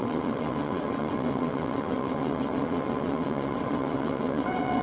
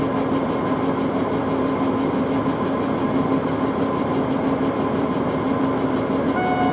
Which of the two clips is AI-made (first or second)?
first